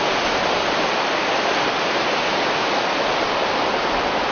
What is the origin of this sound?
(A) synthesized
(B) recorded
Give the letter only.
B